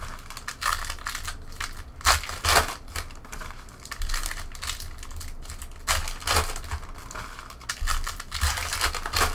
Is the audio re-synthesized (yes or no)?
no